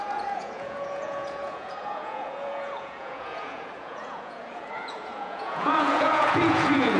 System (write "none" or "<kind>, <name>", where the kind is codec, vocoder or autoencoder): vocoder, Vocos